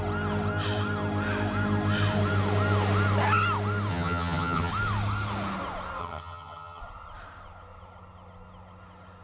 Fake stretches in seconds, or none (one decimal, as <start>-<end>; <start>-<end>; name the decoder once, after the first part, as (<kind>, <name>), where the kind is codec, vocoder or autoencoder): 3.9-4.7 (vocoder, HiFi-GAN); 6.0-6.8